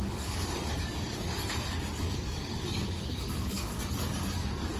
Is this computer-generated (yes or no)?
yes